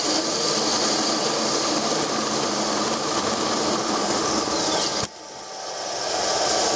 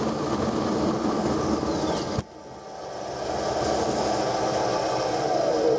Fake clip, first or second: first